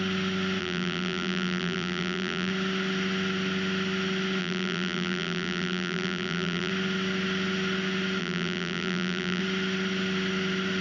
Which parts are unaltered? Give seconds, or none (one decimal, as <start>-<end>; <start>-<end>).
0.0-0.6; 2.5-4.4; 6.7-8.2; 9.4-10.8